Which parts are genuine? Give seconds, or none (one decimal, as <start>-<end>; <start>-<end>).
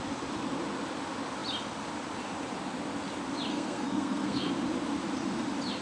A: 0.0-3.5; 4.5-5.8